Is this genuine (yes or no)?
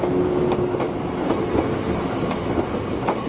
yes